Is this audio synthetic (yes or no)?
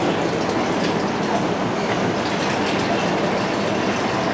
no